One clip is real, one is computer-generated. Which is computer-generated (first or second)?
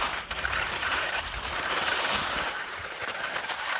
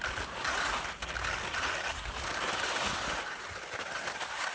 first